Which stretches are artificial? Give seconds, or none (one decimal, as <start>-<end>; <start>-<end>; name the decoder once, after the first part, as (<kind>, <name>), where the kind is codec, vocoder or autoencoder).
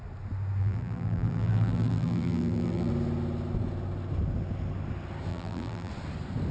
0.6-2.9 (vocoder, BigVGAN v2); 5.3-5.9